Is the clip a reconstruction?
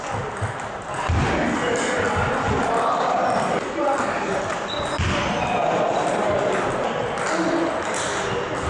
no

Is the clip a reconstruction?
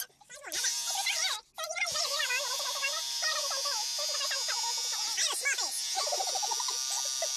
no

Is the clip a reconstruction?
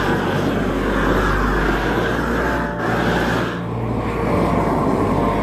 no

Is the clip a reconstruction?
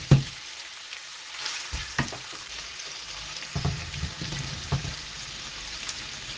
yes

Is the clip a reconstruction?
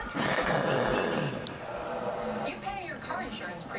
no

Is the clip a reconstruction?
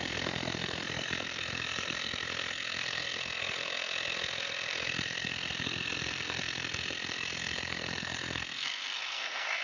yes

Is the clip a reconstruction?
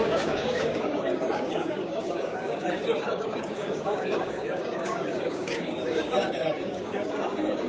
yes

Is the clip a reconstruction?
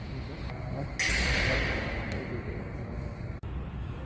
no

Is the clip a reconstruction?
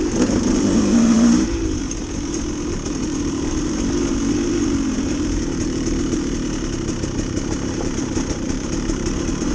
yes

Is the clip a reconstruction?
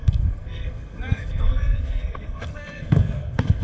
yes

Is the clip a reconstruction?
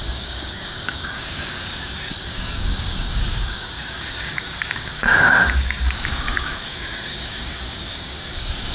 yes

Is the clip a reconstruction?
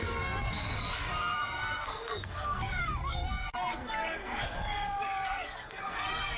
yes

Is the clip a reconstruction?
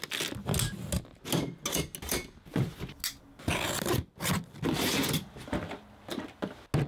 no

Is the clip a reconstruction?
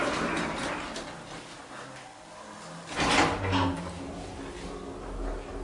no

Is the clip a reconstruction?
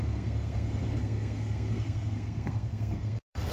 yes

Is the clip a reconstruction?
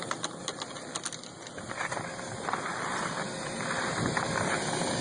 no